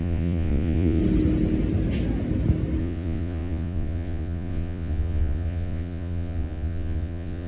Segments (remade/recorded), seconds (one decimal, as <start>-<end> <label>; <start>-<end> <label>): 0.0-1.0 remade; 1.0-2.8 recorded; 2.8-7.5 remade